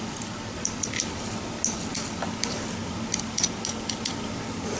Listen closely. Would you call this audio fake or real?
real